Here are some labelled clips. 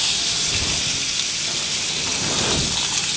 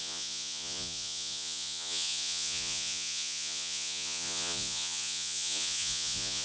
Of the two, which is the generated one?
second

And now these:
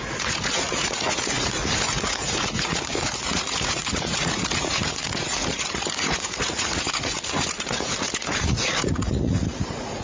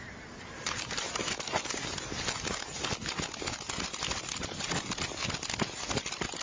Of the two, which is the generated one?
first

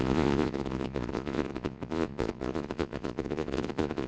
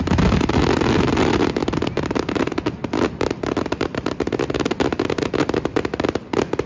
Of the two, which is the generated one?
first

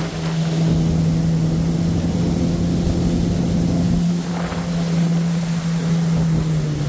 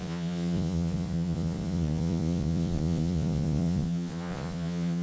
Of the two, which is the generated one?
second